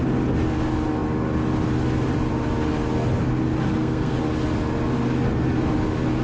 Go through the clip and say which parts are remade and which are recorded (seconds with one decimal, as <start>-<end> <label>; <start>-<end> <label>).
0.0-3.7 recorded; 3.7-4.2 remade; 4.2-6.2 recorded